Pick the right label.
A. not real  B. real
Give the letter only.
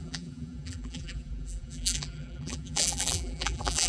A